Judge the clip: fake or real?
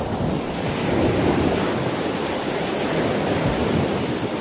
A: real